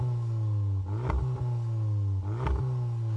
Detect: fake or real real